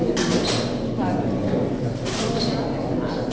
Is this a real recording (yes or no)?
yes